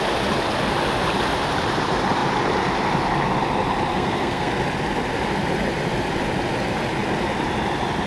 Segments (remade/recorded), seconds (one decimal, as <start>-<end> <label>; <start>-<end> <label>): 0.0-3.9 recorded; 3.9-4.5 remade; 4.5-8.1 recorded